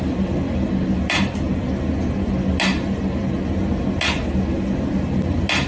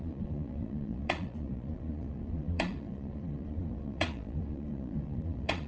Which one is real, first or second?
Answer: first